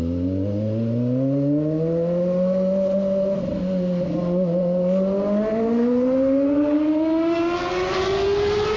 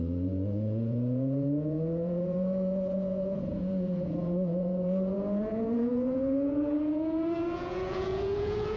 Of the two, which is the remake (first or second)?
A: second